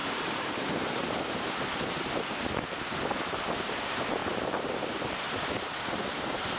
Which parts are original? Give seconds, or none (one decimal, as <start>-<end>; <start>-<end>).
none